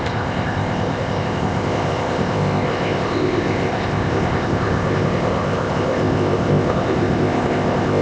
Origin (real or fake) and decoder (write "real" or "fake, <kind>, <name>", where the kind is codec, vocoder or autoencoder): fake, codec, ZipCodec